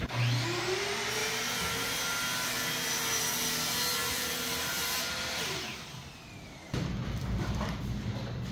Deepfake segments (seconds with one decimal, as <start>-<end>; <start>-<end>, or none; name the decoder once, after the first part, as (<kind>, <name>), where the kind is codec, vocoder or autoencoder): 4.0-7.8 (vocoder, BigVGAN v2)

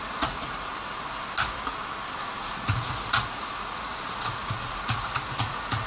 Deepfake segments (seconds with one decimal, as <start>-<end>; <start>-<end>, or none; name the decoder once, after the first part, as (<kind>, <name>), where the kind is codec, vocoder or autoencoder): 0.0-0.7 (vocoder, Vocos); 2.2-5.9

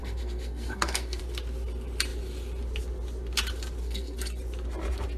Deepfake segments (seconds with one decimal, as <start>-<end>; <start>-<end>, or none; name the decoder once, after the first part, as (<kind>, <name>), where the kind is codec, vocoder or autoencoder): 0.0-1.2 (codec, SNAC); 3.8-4.4